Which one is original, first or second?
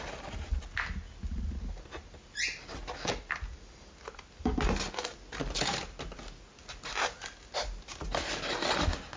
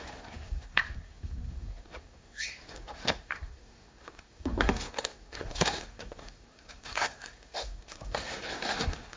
first